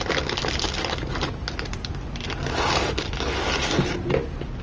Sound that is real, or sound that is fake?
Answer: real